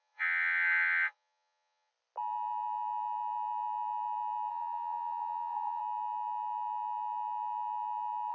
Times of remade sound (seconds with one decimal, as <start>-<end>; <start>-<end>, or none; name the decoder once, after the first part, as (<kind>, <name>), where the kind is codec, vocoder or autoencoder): 0.0-1.9 (vocoder, WaveNeXt); 4.5-5.8